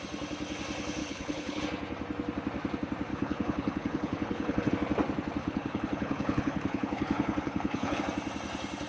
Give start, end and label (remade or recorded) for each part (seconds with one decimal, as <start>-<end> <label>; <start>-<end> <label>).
0.0-1.0 recorded; 1.0-1.6 remade; 1.6-3.1 recorded; 3.1-4.7 remade; 4.7-5.4 recorded; 5.4-8.0 remade; 8.0-8.9 recorded